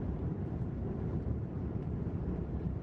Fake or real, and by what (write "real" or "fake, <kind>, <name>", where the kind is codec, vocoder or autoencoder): fake, vocoder, BigVGAN v2